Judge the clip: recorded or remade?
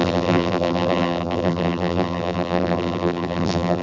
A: remade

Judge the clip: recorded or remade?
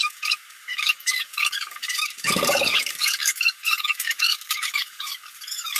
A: remade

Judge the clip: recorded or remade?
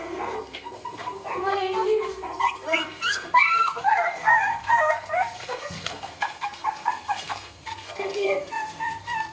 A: remade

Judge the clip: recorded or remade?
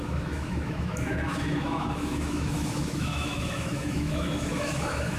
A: remade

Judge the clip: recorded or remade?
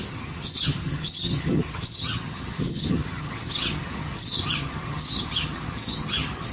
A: remade